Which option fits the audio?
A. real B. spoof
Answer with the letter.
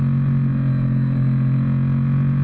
A